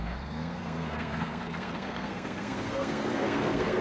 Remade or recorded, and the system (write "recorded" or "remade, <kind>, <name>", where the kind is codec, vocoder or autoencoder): remade, codec, SNAC